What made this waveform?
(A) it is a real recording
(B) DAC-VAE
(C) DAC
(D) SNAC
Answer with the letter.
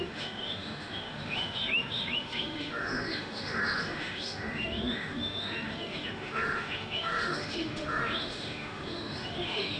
B